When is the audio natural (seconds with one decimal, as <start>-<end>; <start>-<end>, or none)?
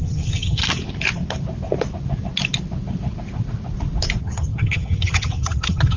0.6-4.2